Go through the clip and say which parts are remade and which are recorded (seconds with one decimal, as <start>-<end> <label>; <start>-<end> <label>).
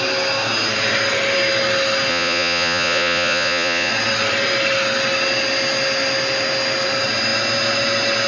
0.0-2.1 recorded; 2.1-3.9 remade; 3.9-8.3 recorded